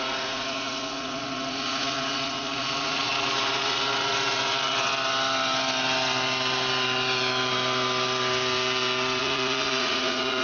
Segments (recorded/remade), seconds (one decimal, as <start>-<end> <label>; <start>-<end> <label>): 0.0-4.9 remade; 4.9-9.2 recorded; 9.2-10.4 remade